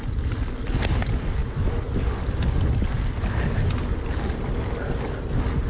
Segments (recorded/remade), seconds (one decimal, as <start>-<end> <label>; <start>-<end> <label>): 0.0-5.7 recorded

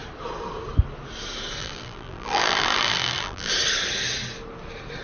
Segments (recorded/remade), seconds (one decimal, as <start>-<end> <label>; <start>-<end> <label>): 0.0-1.6 recorded; 1.6-3.5 remade; 3.5-5.0 recorded

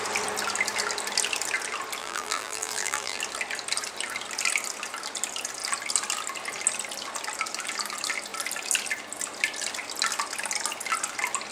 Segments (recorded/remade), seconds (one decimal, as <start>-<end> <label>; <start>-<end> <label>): 0.0-2.0 recorded; 2.0-3.2 remade; 3.2-11.5 recorded